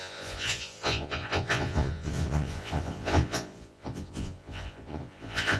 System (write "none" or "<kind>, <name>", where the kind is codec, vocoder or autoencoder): vocoder, Vocos